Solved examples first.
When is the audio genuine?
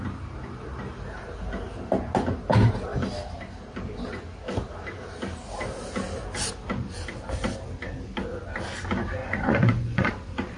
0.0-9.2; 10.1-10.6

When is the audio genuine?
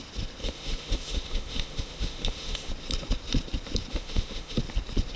0.0-0.4; 2.7-3.9; 4.6-5.2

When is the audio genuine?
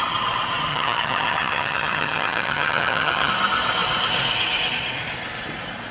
0.0-0.7; 3.3-5.9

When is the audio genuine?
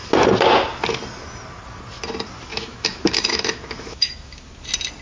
0.0-2.5; 4.5-5.0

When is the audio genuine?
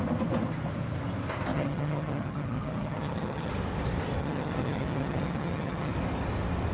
0.0-1.5; 3.5-4.2; 5.9-6.7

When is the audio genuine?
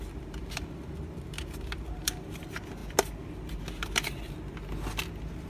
0.0-5.5